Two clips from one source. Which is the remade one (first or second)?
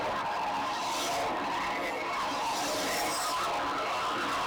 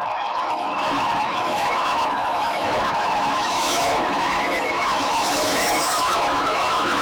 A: second